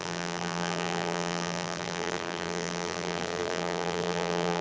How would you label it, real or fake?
fake